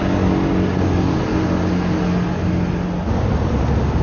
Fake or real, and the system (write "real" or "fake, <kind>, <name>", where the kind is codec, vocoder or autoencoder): real